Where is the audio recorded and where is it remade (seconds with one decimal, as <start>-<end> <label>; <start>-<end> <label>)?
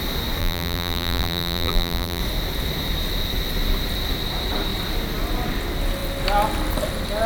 0.0-0.4 recorded; 0.4-2.2 remade; 2.2-7.3 recorded